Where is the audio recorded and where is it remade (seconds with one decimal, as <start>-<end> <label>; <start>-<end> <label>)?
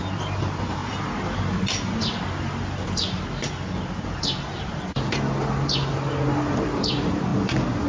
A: 0.0-7.9 recorded